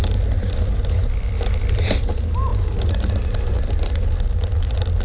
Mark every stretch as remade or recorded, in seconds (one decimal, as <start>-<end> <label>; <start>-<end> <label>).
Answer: 0.0-5.0 recorded